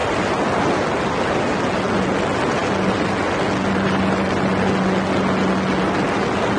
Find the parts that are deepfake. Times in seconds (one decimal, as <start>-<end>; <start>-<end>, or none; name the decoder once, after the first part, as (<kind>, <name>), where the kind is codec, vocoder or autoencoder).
none